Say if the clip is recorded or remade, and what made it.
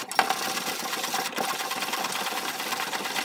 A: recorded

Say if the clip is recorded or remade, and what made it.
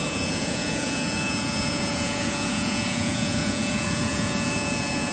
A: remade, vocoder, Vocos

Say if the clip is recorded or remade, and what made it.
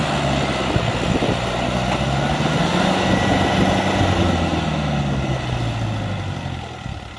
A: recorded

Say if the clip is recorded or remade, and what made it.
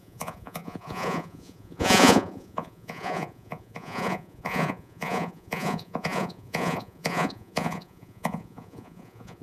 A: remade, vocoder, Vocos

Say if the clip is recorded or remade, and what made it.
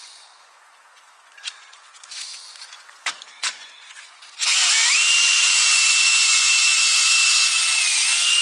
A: remade, vocoder, Vocos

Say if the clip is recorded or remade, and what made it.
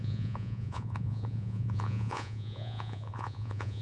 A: remade, vocoder, Vocos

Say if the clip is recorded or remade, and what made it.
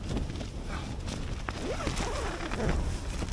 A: recorded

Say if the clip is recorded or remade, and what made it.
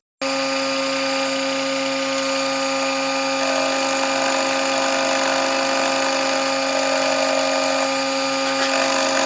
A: recorded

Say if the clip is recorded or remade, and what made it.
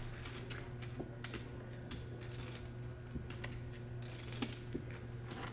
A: recorded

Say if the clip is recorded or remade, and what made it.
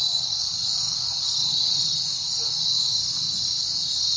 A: recorded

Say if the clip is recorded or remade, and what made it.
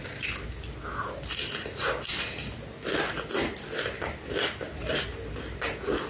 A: recorded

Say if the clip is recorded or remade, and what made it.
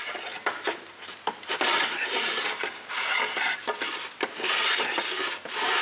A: recorded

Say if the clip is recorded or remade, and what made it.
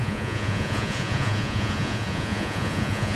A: remade, vocoder, Vocos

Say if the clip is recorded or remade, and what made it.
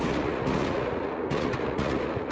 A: remade, vocoder, Vocos